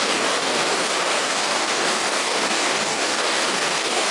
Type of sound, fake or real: fake